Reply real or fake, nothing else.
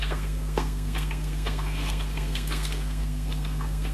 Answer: fake